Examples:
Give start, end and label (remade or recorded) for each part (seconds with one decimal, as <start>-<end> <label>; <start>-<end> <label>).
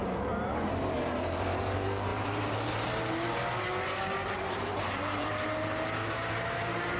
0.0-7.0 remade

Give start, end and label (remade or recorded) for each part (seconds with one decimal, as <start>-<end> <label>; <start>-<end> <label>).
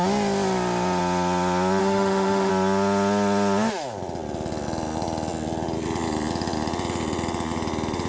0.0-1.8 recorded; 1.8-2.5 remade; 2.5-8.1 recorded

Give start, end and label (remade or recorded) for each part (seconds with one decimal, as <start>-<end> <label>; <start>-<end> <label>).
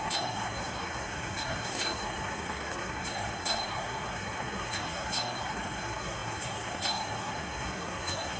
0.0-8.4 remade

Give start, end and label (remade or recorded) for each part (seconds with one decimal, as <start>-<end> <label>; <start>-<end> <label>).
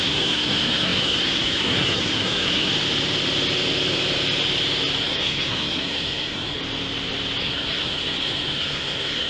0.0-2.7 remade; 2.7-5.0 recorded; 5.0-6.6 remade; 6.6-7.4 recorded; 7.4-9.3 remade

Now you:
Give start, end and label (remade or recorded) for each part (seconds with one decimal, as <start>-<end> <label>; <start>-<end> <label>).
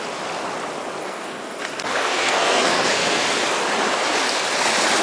0.0-1.0 recorded; 1.0-3.2 remade; 3.2-5.0 recorded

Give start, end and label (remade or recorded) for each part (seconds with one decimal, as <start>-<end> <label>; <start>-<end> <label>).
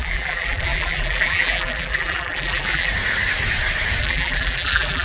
0.0-2.9 remade; 2.9-4.0 recorded; 4.0-5.0 remade